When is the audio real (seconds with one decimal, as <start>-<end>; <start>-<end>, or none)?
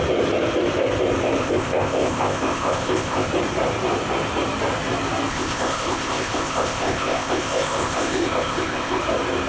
0.0-1.4; 3.3-5.3; 9.0-9.5